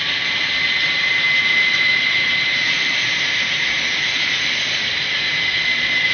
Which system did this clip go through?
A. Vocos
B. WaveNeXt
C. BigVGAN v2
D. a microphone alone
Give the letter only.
C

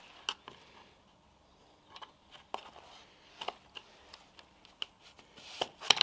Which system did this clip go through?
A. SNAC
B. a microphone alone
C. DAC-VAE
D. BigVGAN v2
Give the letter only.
B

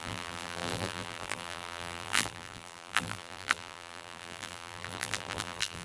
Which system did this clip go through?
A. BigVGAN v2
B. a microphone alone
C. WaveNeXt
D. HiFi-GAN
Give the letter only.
A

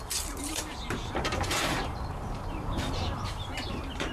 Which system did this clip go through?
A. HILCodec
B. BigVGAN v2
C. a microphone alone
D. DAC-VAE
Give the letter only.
B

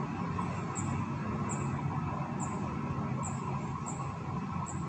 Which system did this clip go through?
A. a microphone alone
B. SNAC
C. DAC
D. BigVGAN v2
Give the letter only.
A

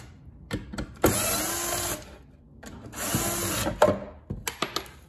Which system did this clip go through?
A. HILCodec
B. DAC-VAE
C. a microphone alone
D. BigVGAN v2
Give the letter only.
C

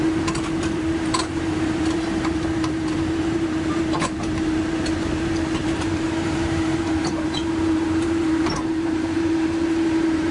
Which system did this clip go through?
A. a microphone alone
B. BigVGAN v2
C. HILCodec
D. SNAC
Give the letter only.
B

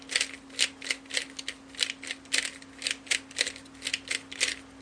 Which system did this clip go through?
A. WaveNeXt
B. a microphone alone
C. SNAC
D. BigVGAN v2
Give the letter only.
B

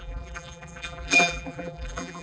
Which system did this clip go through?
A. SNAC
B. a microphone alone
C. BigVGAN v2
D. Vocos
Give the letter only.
C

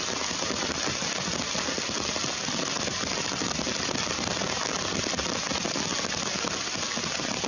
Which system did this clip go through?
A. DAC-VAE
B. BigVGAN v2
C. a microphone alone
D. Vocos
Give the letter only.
C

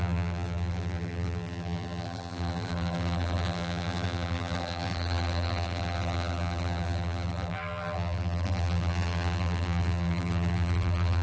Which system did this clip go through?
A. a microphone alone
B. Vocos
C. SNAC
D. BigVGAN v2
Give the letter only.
D